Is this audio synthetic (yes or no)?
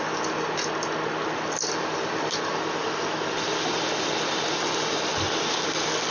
no